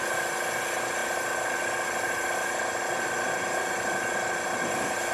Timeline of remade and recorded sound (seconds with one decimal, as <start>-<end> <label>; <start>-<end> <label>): 0.0-5.1 recorded